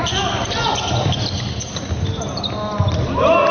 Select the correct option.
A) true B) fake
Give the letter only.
A